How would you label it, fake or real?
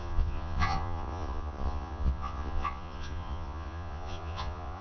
fake